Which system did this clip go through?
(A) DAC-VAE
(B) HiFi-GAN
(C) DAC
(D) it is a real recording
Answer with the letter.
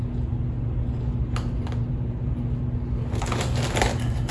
D